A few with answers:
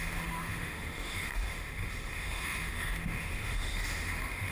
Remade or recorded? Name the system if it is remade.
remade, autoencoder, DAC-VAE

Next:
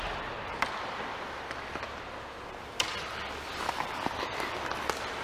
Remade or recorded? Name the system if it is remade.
recorded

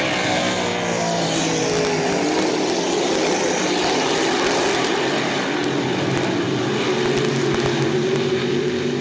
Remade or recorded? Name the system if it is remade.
recorded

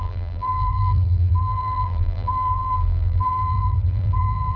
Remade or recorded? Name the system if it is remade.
remade, vocoder, BigVGAN v2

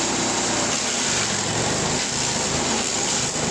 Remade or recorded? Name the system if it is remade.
recorded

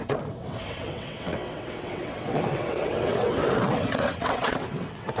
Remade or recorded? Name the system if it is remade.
remade, vocoder, WaveNeXt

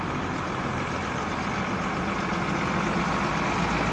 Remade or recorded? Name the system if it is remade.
recorded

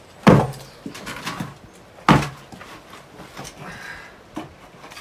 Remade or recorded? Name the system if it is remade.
recorded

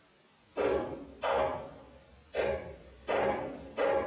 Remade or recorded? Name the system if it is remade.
recorded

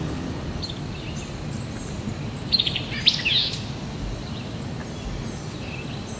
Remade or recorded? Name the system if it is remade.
recorded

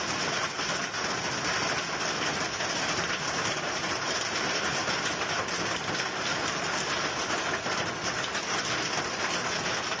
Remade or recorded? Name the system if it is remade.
recorded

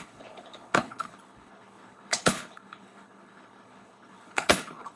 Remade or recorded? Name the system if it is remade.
remade, codec, HILCodec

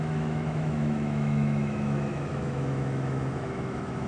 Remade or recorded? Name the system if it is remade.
remade, autoencoder, DAC-VAE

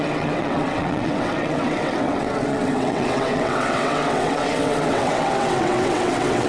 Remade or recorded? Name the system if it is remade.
remade, vocoder, WaveNeXt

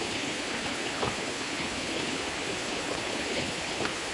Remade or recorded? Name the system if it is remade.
remade, codec, HILCodec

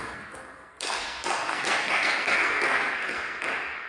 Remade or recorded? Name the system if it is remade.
remade, codec, SNAC